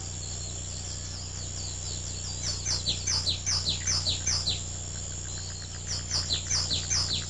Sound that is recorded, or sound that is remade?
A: recorded